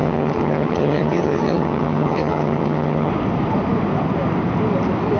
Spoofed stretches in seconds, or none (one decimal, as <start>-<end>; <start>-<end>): 0.0-3.1